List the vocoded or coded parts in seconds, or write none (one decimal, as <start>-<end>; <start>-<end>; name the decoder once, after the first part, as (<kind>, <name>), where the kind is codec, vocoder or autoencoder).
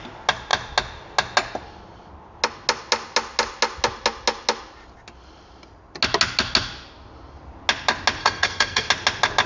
8.2-8.9 (codec, SNAC)